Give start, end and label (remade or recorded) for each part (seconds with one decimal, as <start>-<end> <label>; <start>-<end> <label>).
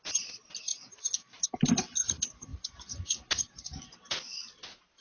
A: 0.0-0.7 recorded; 0.7-1.4 remade; 1.4-5.0 recorded